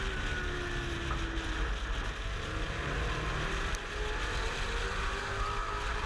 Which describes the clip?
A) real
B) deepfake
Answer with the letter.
A